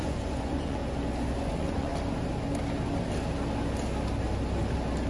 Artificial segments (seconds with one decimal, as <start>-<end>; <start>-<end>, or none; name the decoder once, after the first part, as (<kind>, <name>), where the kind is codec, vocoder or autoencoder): 0.0-0.8 (vocoder, Vocos); 1.4-1.9